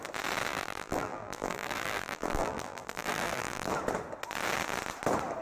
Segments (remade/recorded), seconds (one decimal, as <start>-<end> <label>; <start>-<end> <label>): 0.0-0.5 recorded; 0.5-3.7 remade; 3.7-5.4 recorded